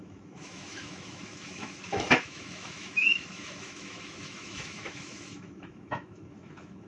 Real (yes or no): no